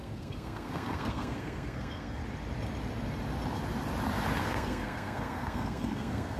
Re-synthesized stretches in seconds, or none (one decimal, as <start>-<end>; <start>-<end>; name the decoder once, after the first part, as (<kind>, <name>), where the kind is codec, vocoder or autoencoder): 0.0-2.2 (codec, SNAC); 4.4-6.4